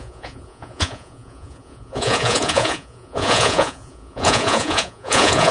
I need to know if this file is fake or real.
fake